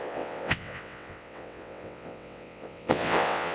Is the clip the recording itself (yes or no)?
no